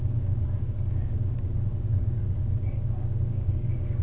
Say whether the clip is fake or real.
fake